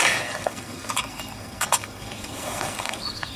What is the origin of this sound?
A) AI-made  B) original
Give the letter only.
A